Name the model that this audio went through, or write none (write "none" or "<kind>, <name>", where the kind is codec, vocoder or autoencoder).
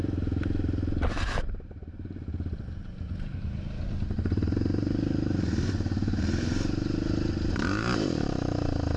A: vocoder, BigVGAN v2